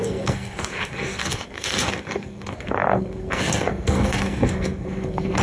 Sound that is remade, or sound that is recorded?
remade